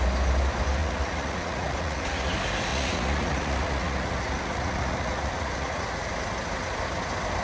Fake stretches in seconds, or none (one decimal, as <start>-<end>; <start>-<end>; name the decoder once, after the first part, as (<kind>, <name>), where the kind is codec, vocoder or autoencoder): 0.8-2.3 (vocoder, Vocos); 2.7-6.1